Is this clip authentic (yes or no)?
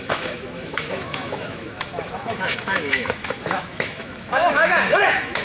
no